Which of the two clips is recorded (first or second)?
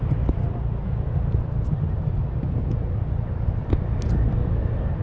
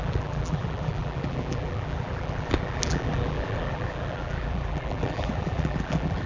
first